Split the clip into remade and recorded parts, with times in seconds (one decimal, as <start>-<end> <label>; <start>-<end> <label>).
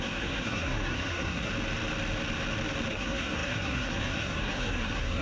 0.0-1.5 remade; 1.5-2.9 recorded; 2.9-5.2 remade